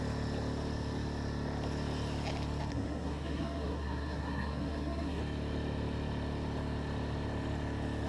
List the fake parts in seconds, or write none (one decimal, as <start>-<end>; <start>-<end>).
2.7-5.2